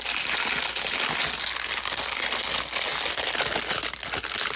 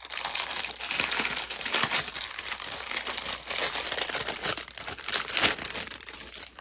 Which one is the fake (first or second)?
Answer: second